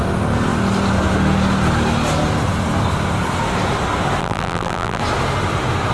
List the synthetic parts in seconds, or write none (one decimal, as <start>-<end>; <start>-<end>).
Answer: 4.2-5.0